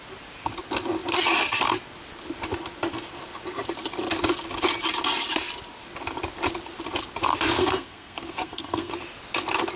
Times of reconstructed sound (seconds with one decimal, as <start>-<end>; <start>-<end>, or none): 7.6-8.9